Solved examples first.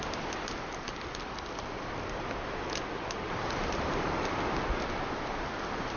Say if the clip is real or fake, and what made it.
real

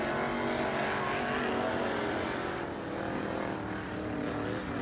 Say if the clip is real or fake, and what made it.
real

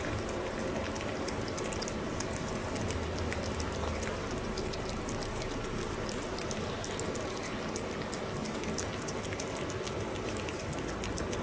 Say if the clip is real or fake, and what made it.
real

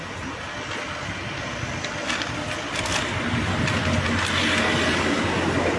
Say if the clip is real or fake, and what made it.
real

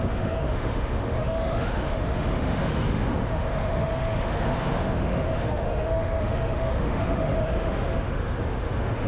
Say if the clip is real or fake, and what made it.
fake, autoencoder, DAC-VAE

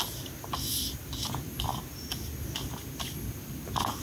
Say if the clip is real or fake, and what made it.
real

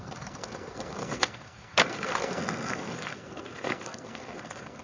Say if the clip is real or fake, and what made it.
fake, codec, SNAC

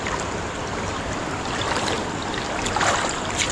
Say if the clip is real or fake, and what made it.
real